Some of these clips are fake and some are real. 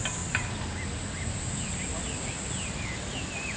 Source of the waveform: real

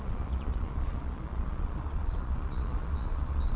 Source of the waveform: fake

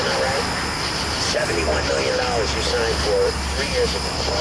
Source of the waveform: real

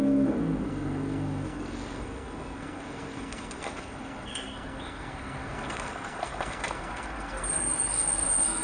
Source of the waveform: fake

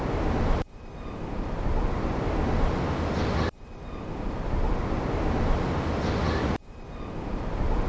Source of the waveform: real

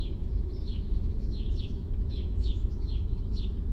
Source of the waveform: fake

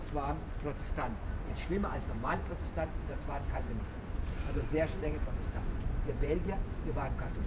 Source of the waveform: fake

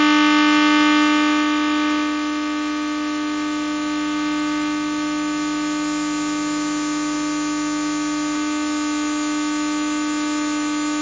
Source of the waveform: real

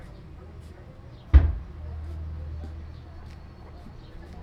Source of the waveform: real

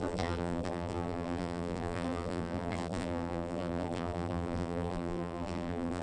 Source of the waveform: fake